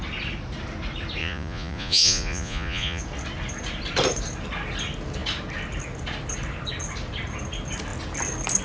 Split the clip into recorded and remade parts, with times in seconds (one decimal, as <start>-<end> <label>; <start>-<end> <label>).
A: 0.0-1.2 recorded; 1.2-3.0 remade; 3.0-8.6 recorded